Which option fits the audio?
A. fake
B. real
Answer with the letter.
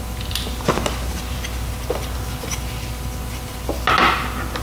B